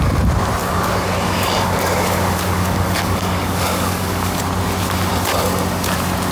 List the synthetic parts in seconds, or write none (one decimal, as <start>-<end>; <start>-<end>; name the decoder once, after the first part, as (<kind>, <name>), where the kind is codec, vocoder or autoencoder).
0.6-4.4 (codec, DAC)